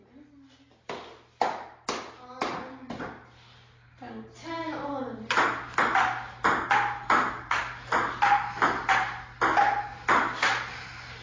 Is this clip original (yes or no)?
yes